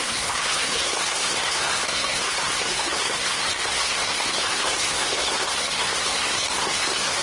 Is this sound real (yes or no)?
no